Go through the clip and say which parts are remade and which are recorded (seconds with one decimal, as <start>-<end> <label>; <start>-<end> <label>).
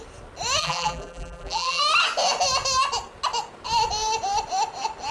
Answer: 0.0-0.6 recorded; 0.6-1.8 remade; 1.8-5.1 recorded